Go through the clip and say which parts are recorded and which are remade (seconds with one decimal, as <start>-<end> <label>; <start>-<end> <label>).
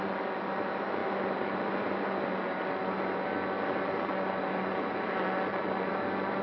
0.0-6.4 recorded